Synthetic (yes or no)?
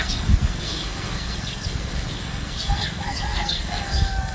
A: yes